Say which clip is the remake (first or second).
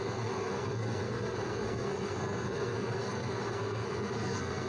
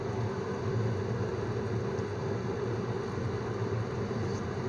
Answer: first